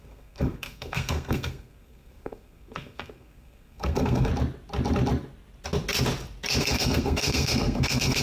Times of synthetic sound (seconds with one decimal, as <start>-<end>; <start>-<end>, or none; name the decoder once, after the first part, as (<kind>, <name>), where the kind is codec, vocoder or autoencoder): 0.0-4.3 (codec, SNAC); 6.6-8.2